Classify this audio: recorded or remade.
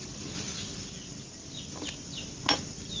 recorded